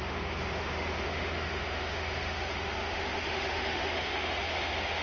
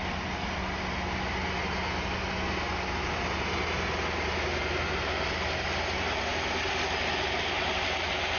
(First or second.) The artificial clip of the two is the first